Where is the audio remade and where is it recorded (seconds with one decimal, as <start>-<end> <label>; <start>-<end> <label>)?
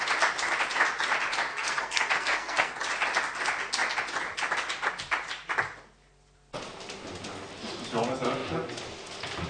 0.0-1.5 recorded; 1.5-2.8 remade; 2.8-9.5 recorded